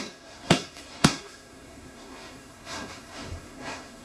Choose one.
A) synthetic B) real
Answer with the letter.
A